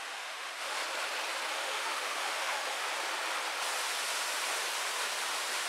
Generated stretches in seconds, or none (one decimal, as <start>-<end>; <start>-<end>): 0.0-0.8; 1.5-2.8